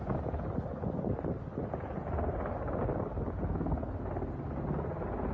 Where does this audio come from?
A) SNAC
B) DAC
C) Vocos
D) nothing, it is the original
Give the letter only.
D